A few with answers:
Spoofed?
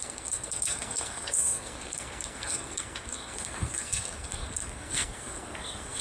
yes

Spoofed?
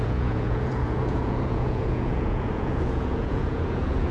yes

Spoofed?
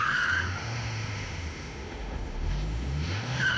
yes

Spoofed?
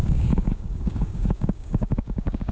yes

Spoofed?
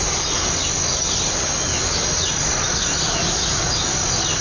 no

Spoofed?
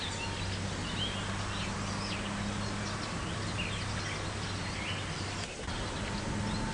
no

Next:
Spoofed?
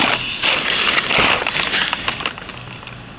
no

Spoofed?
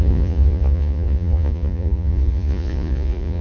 yes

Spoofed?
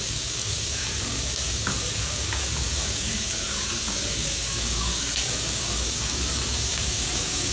yes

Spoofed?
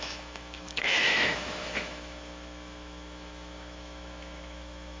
yes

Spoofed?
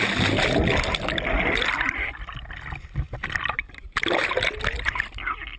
no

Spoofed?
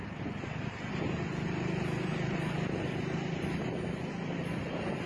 no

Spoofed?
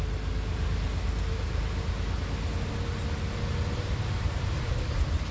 no